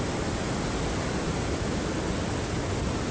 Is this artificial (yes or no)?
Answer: no